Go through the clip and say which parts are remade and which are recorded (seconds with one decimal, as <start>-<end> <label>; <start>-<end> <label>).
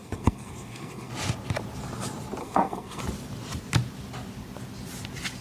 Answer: 0.0-1.1 remade; 1.1-2.4 recorded; 2.4-3.0 remade; 3.0-5.4 recorded